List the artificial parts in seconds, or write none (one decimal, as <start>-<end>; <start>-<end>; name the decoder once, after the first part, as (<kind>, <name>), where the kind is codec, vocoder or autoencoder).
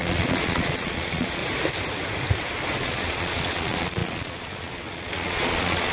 0.0-1.4 (vocoder, Vocos); 2.8-5.9